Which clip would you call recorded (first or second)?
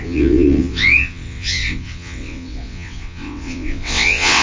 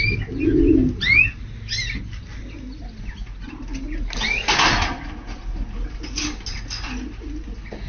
second